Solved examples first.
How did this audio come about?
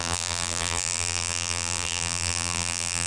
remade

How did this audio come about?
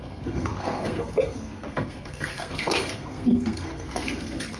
remade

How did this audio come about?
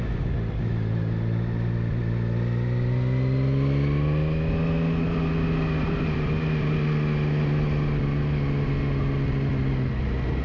recorded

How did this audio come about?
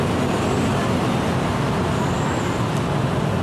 recorded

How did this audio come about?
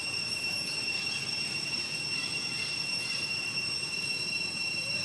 remade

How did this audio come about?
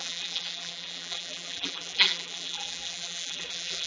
remade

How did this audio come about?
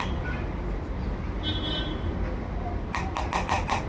recorded